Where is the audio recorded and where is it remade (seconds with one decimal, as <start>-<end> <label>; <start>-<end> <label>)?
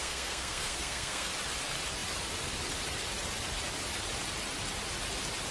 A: 0.0-1.3 remade; 1.3-5.5 recorded